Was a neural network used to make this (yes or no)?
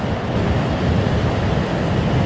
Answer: no